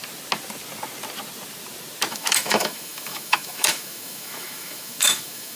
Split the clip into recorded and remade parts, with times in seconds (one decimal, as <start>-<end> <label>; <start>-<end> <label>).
0.0-2.1 recorded; 2.1-5.6 remade